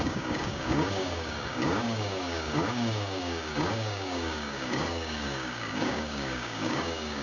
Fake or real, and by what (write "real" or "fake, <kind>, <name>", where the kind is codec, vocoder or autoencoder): fake, codec, DAC